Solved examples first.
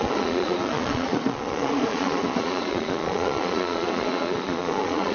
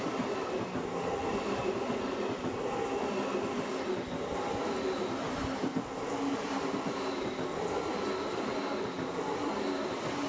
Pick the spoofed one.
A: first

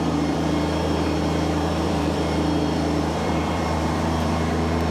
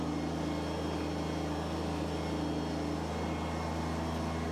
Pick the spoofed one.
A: first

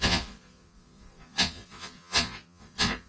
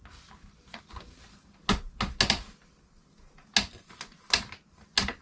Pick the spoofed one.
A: first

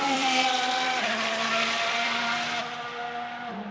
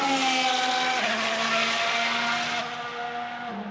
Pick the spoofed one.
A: first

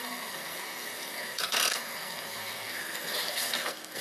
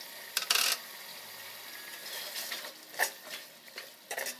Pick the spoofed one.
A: first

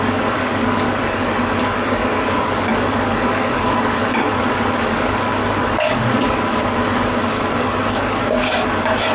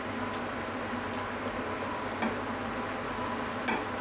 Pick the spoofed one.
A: first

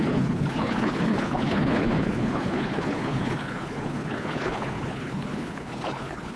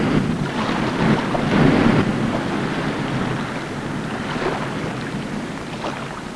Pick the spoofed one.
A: first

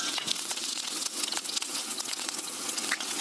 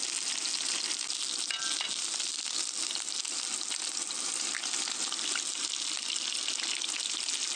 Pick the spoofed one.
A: first